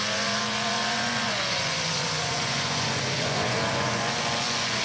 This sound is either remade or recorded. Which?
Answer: remade